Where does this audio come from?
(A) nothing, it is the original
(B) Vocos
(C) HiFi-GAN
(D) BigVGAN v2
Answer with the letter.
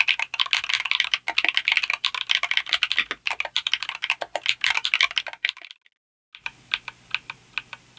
A